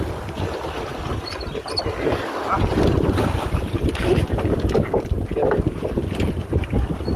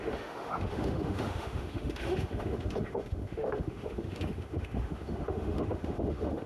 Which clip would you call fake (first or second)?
second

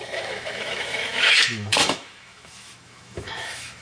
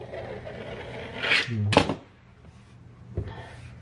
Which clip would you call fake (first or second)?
first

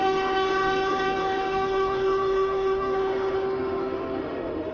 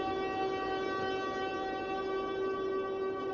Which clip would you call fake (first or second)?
first